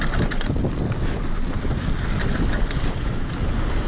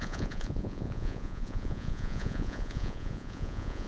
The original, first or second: first